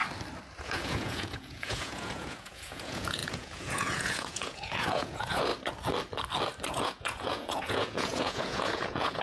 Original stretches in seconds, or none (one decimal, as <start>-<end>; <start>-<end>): 0.0-0.6; 5.5-6.7